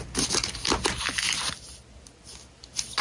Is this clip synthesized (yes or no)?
no